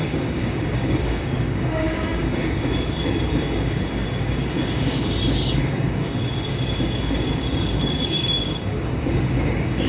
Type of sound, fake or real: fake